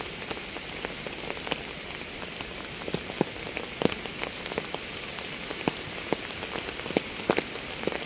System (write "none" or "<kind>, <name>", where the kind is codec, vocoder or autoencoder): none